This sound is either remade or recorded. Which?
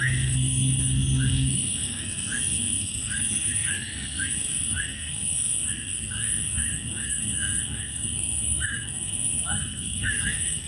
remade